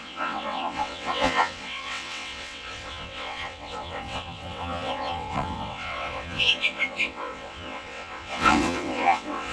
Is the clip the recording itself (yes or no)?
no